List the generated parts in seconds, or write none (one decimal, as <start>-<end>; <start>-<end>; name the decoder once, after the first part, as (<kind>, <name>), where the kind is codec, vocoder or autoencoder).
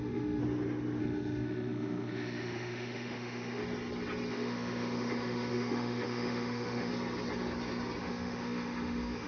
0.0-0.4 (autoencoder, DAC-VAE); 1.0-3.6; 4.3-6.9; 8.0-9.3